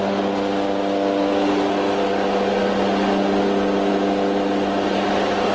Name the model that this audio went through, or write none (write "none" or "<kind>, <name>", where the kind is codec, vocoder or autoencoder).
none